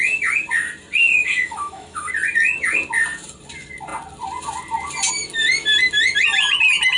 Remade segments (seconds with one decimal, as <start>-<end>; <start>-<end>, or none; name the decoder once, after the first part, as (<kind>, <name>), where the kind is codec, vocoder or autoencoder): 1.1-2.1 (autoencoder, DAC-VAE)